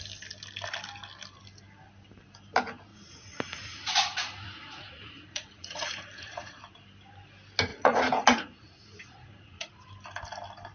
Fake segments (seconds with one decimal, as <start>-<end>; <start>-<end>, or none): 2.9-6.6; 7.7-9.9

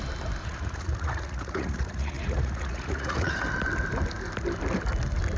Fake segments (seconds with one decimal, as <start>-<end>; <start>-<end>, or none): 0.4-3.3

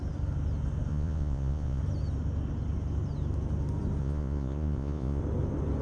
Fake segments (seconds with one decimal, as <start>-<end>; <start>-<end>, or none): 0.9-1.8; 4.0-5.2

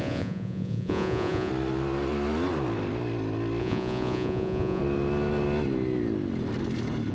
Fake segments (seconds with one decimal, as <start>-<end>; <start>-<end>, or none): 0.0-1.5; 3.6-4.8

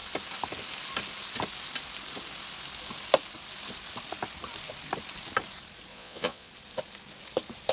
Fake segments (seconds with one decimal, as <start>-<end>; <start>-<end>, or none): 5.9-6.5

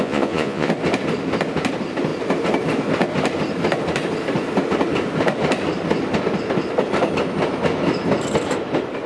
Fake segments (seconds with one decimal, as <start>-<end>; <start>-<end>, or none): 0.0-0.7

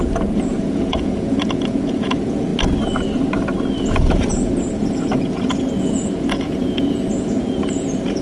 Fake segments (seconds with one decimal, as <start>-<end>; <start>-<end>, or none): 0.0-2.5; 3.8-8.2

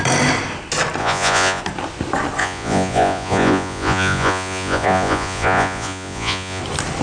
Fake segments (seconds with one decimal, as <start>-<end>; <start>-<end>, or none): 1.0-1.6; 2.4-6.6